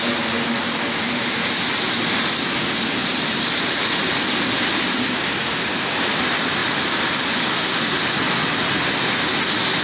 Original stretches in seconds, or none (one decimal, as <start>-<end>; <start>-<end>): 0.0-9.8